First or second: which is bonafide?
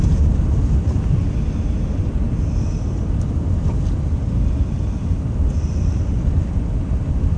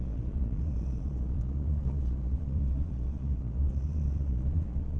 first